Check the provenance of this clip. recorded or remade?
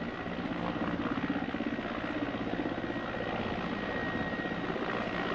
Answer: recorded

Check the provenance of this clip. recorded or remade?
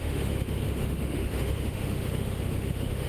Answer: remade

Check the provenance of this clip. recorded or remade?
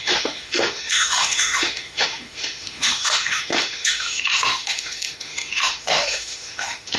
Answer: remade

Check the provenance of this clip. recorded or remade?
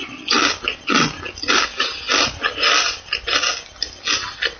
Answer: recorded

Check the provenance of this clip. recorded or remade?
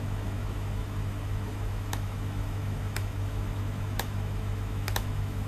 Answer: remade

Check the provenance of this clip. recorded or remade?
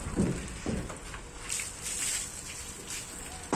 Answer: recorded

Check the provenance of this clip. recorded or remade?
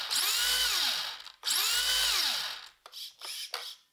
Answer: recorded